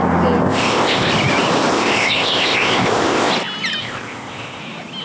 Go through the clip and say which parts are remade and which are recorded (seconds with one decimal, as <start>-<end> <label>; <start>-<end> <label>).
0.0-0.4 recorded; 0.4-1.1 remade; 1.1-1.7 recorded; 1.7-3.3 remade; 3.3-3.8 recorded; 3.8-4.6 remade; 4.6-5.0 recorded